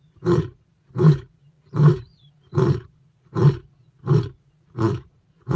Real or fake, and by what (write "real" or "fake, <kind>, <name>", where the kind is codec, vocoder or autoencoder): fake, vocoder, Vocos